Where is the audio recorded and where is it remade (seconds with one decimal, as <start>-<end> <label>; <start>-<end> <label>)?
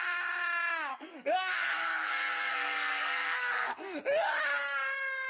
0.0-0.9 recorded; 0.9-2.1 remade; 2.1-2.5 recorded; 2.5-4.0 remade; 4.0-5.3 recorded